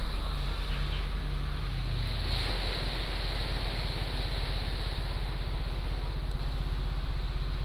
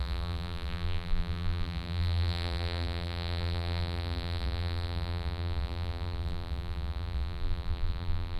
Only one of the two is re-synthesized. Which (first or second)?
second